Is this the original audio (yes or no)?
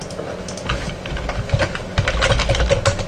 yes